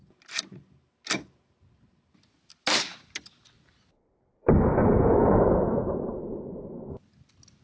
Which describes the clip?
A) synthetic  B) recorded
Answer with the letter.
B